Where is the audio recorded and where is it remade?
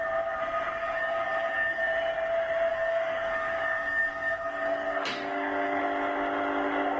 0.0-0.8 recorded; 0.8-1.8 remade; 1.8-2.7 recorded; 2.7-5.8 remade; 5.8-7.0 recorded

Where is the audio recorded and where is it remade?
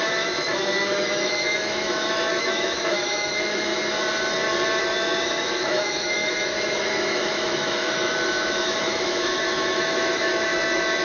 0.0-3.7 remade; 3.7-4.8 recorded; 4.8-11.0 remade